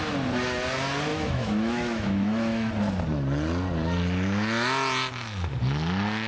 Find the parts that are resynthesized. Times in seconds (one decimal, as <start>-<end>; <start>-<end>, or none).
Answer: 1.1-2.7